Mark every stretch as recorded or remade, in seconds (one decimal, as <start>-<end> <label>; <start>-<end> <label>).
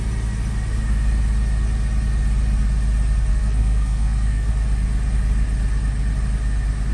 0.0-3.3 recorded; 3.3-4.5 remade; 4.5-6.9 recorded